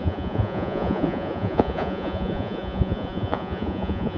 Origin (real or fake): fake